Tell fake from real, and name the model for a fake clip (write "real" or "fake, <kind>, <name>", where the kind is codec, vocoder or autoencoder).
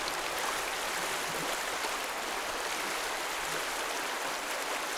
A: real